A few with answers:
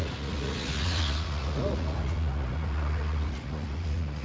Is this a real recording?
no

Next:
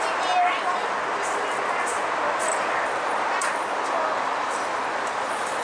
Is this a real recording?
yes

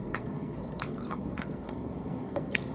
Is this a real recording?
no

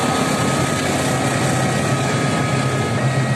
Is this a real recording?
yes